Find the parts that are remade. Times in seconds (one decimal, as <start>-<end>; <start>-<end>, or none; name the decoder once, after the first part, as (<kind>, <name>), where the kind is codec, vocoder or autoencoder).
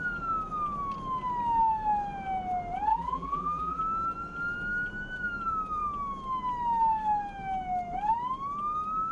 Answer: 2.9-3.8 (vocoder, BigVGAN v2)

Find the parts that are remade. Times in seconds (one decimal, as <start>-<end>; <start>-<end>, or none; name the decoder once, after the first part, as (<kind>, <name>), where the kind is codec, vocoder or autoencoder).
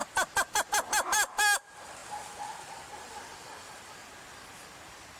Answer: 2.0-4.1 (vocoder, BigVGAN v2)